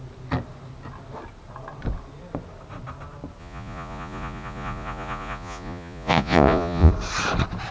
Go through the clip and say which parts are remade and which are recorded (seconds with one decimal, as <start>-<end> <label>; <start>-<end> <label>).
0.0-3.4 recorded; 3.4-6.9 remade; 6.9-7.7 recorded